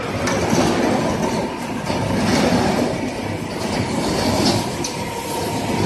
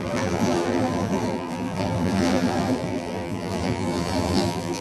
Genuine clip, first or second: first